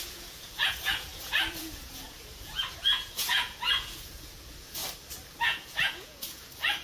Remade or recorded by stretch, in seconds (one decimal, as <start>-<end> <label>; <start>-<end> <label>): 0.0-4.8 remade; 4.8-5.4 recorded; 5.4-6.8 remade